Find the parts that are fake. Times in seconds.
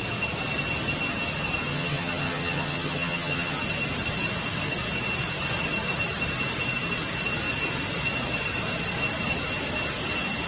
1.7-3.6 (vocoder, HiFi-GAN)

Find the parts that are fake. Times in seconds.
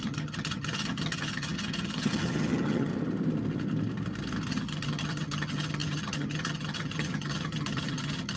0.0-2.9 (vocoder, HiFi-GAN); 4.5-8.4